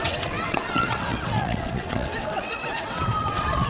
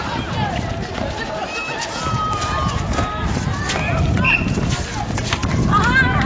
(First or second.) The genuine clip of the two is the second